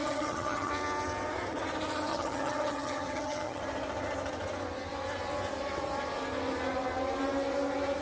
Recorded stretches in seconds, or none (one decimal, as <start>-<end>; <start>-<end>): 0.7-2.1; 3.6-8.0